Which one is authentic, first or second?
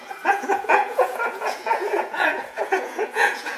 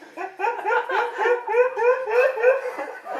second